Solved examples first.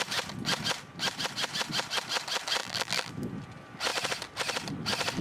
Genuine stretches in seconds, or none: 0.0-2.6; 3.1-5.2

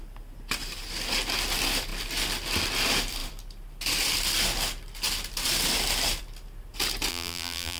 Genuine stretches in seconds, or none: 0.0-7.1

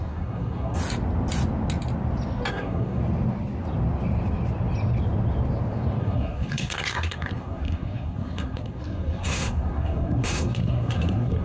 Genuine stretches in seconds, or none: 0.8-2.5; 3.0-6.0

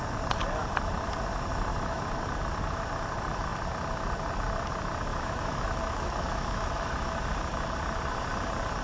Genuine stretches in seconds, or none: 0.0-1.7; 2.2-5.1; 7.2-8.8

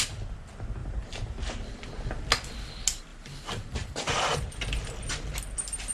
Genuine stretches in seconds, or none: 0.0-0.8; 2.2-3.1; 4.5-5.9

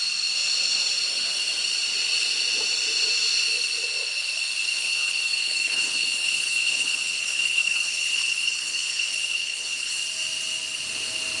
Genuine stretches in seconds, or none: 0.0-4.8; 10.0-11.4